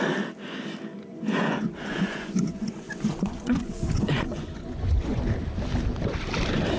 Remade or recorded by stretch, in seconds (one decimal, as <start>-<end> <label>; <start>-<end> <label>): 0.0-1.1 recorded; 1.1-5.2 remade; 5.2-6.8 recorded